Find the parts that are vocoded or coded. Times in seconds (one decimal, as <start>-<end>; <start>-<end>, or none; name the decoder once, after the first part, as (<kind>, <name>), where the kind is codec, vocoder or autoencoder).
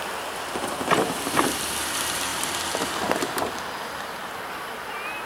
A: 2.3-3.4 (vocoder, BigVGAN v2)